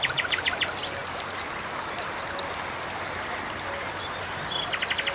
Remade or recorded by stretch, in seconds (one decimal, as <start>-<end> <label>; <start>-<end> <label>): 0.0-5.1 recorded